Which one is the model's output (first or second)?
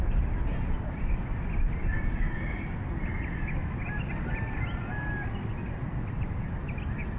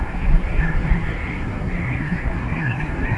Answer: second